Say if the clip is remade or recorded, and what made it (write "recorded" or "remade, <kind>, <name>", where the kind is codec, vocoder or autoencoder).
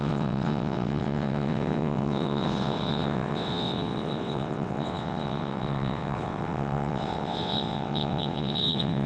remade, vocoder, WaveNeXt